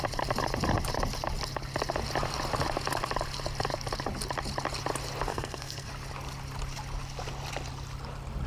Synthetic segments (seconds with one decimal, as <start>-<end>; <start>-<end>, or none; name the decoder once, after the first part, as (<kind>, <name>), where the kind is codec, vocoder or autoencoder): 5.3-5.9 (codec, SNAC)